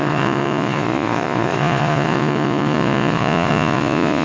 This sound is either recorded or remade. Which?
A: remade